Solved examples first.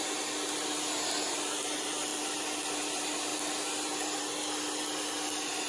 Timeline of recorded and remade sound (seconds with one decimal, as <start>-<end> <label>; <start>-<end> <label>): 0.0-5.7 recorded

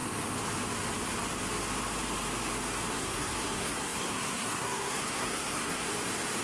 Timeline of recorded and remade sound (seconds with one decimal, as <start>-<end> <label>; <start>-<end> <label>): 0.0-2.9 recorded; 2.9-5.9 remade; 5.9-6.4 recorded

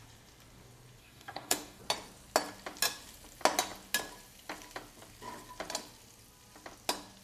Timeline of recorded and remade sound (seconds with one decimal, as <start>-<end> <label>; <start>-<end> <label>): 0.0-1.0 recorded; 1.0-1.8 remade; 1.8-7.2 recorded

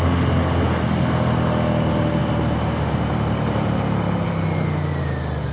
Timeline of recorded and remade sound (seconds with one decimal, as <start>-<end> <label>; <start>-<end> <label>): 0.0-5.5 recorded

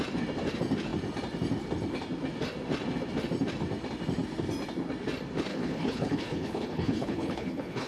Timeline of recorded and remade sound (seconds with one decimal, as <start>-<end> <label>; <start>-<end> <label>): 0.0-5.5 recorded; 5.5-7.9 remade

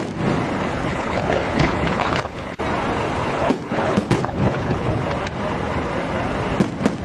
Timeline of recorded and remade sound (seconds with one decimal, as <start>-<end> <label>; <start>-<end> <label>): 0.0-0.7 recorded; 0.7-2.6 remade; 2.6-3.2 recorded; 3.2-5.0 remade; 5.0-7.0 recorded

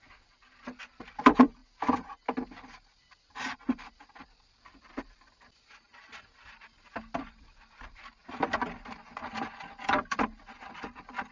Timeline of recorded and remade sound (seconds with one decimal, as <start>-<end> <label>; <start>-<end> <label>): 0.0-1.6 remade; 1.6-3.5 recorded; 3.5-8.2 remade; 8.2-8.9 recorded; 8.9-11.3 remade

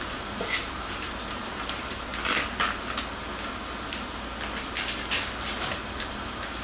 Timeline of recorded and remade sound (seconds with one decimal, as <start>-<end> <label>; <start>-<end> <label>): 0.0-2.1 remade; 2.1-5.7 recorded; 5.7-6.6 remade